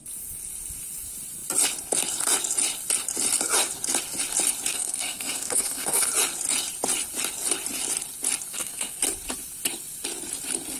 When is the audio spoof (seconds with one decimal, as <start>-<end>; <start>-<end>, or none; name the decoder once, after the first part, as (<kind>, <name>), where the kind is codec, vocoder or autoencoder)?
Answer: 4.7-6.1 (codec, SNAC); 8.5-9.0